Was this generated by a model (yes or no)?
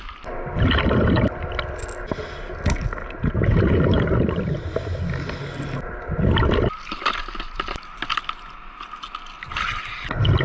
no